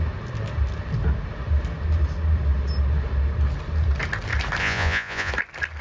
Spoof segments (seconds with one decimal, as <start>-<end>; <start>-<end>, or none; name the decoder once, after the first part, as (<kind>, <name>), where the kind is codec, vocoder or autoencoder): 4.6-5.3 (vocoder, Vocos)